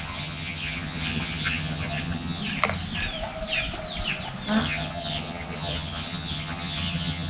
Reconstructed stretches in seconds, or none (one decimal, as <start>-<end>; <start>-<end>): 0.0-2.4; 4.6-7.3